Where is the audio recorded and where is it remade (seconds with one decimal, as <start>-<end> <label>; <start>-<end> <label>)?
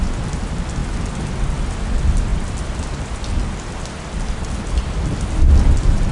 0.0-6.1 recorded